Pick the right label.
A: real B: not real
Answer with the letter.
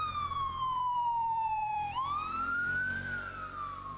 B